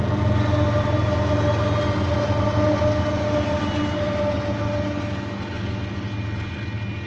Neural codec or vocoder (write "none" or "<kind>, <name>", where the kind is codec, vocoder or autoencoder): none